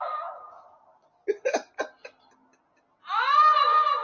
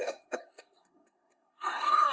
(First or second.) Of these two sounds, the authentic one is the first